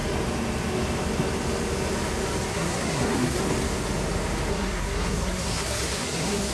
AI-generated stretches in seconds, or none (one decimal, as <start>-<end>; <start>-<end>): 2.5-3.4; 4.5-6.5